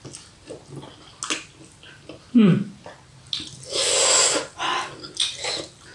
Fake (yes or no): no